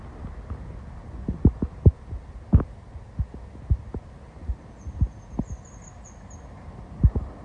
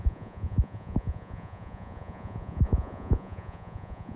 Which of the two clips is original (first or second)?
first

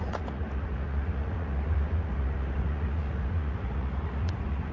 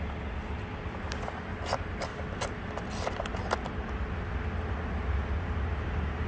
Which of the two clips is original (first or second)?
second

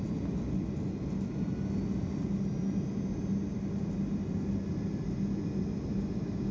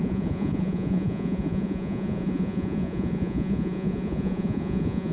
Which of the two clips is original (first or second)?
first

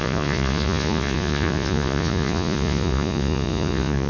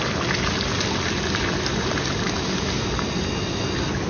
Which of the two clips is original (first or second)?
second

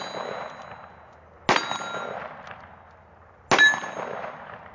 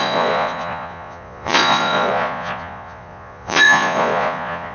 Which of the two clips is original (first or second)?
first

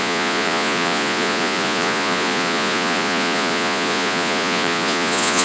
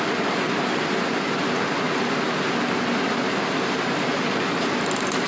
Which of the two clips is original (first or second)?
second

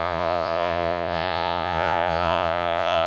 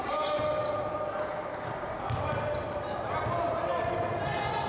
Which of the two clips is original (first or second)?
second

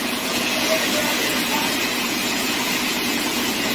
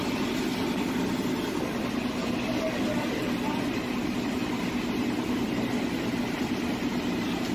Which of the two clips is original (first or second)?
second